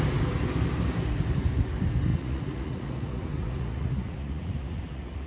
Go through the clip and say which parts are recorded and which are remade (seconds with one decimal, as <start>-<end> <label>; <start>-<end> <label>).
0.0-2.1 recorded; 2.1-5.3 remade